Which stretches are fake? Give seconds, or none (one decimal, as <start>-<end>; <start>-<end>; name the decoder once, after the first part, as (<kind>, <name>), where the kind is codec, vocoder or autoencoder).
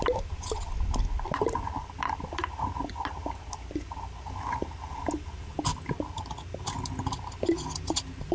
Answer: none